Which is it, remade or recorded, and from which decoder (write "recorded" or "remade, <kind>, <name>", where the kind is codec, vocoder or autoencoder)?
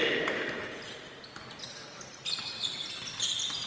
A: recorded